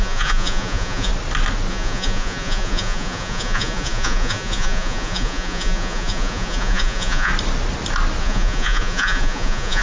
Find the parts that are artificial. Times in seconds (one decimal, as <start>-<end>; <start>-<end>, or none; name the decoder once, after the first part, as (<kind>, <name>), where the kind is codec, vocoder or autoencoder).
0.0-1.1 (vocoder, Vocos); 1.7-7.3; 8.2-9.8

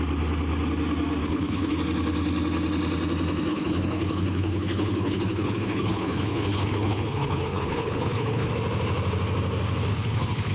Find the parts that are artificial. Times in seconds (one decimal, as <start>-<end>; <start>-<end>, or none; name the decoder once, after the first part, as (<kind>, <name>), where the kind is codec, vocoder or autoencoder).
1.2-1.8 (codec, HILCodec); 3.5-8.5; 9.9-10.5

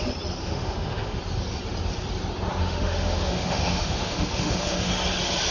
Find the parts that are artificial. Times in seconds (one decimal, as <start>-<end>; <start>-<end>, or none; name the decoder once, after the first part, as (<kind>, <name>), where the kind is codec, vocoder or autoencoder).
0.4-1.2 (autoencoder, DAC-VAE); 2.6-4.9